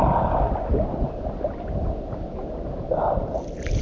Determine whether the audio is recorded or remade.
recorded